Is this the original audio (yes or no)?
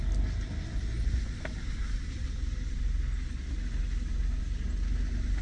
yes